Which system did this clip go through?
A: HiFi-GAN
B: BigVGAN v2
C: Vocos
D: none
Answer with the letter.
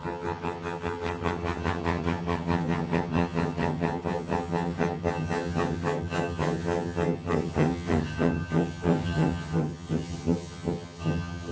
A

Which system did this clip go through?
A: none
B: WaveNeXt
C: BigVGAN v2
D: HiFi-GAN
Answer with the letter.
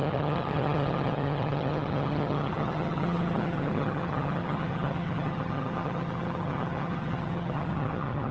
D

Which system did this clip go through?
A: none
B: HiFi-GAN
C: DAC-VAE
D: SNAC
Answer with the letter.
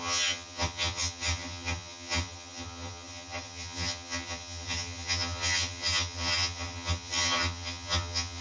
B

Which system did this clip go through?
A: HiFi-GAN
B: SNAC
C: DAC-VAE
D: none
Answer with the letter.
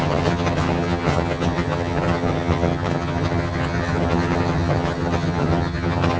A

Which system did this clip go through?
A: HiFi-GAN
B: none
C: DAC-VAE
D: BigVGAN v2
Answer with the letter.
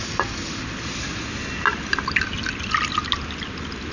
B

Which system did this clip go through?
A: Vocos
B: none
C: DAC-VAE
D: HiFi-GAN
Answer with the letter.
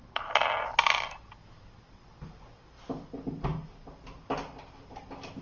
B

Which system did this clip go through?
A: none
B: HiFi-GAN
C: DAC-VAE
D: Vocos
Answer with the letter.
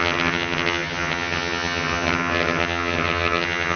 B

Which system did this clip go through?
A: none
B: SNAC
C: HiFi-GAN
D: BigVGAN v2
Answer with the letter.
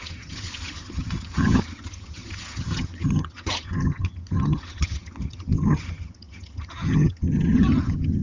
C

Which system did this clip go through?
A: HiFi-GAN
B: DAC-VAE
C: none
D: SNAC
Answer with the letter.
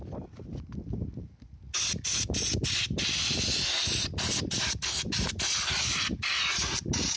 C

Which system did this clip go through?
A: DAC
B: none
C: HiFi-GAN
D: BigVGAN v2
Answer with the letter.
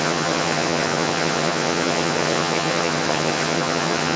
C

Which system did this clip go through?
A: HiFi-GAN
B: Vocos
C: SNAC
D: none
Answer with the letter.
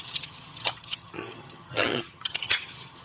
A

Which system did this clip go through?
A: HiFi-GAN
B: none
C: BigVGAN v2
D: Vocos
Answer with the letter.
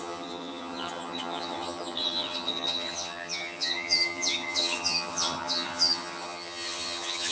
A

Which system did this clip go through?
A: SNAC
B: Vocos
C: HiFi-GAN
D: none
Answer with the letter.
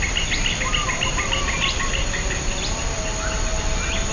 D